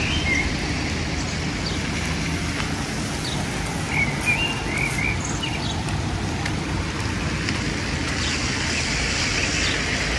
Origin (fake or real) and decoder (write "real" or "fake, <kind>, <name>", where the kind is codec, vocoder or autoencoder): real